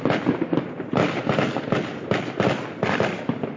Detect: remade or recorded recorded